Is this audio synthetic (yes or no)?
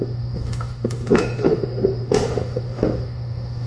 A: yes